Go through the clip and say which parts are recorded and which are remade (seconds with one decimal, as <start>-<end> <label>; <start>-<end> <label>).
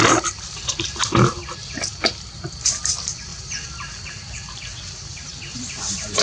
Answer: 0.0-6.2 recorded